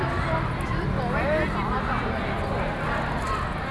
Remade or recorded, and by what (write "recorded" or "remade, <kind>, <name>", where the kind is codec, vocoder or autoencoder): recorded